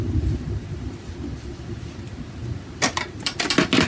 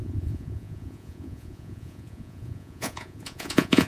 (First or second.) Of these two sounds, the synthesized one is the second